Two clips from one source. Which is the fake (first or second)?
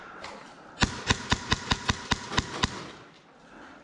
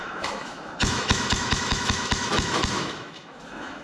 second